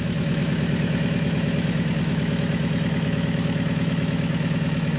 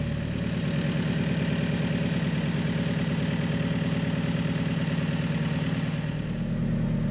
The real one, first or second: second